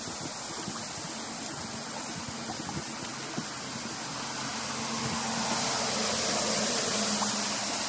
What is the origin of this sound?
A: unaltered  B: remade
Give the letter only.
A